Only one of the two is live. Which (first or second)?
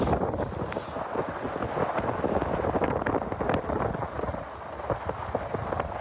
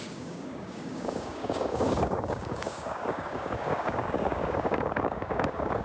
first